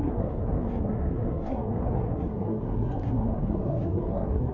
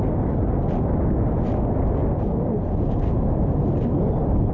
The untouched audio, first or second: second